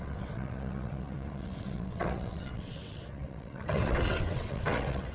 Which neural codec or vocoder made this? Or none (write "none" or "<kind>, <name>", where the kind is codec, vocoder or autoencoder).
vocoder, WaveNeXt